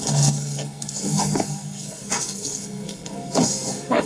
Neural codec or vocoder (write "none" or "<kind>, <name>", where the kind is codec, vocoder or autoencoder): codec, SNAC